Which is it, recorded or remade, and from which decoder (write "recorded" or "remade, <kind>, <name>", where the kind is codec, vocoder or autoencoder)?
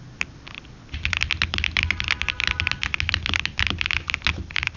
recorded